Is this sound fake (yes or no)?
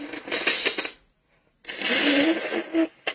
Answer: no